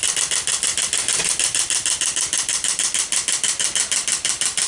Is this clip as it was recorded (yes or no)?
yes